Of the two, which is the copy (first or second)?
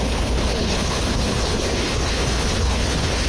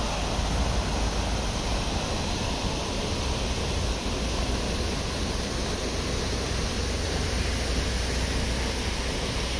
first